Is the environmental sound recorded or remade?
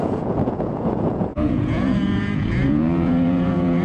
remade